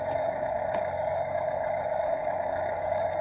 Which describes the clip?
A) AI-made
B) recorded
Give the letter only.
A